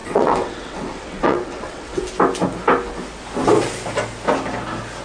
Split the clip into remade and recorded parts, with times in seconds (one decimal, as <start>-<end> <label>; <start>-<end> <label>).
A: 0.0-2.0 remade; 2.0-5.0 recorded